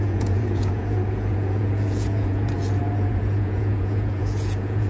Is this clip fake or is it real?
fake